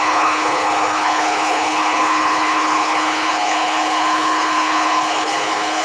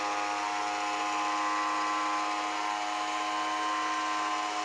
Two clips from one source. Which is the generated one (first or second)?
first